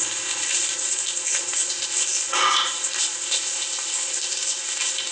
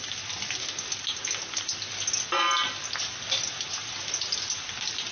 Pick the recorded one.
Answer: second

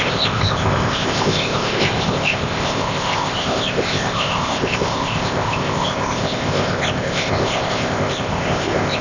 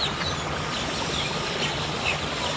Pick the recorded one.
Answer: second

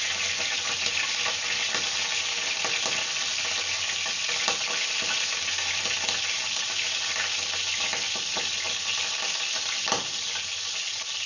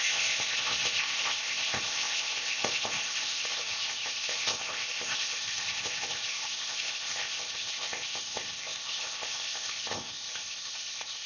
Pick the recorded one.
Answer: first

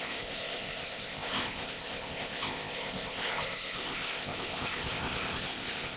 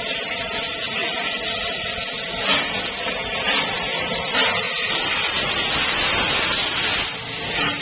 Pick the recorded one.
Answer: second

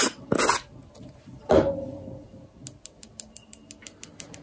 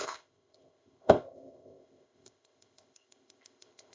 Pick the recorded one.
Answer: first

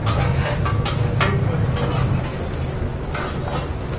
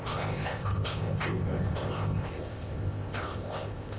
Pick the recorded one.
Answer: first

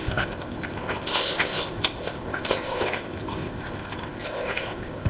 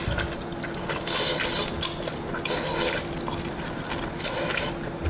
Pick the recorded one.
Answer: second